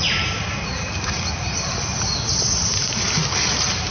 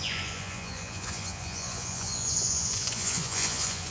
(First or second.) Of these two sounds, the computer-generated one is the second